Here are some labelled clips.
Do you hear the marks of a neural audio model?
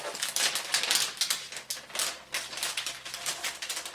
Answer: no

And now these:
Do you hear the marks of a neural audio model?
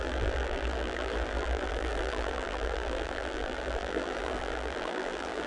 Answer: yes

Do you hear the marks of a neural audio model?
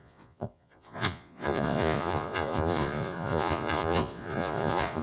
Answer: yes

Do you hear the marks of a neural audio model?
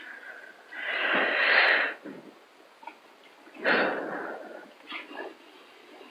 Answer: no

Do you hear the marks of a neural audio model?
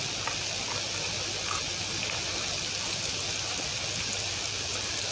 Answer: no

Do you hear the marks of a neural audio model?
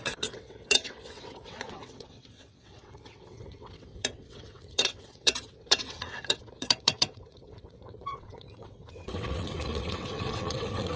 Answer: yes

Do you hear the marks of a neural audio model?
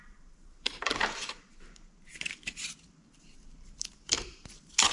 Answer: yes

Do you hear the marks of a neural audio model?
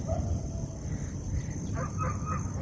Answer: no